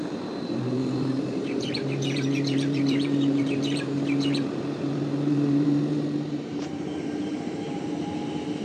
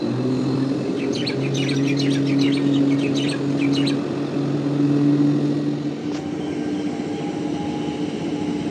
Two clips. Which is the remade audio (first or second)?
first